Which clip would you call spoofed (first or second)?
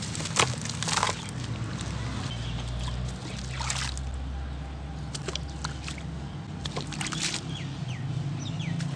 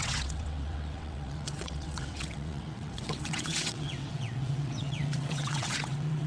second